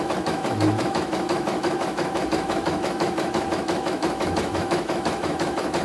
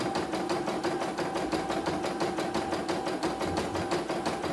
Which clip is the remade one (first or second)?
first